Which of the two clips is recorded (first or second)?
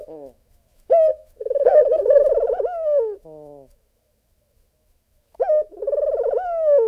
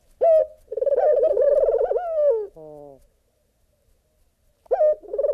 second